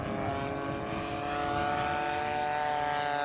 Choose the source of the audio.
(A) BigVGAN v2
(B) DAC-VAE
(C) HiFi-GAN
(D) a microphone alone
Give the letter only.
D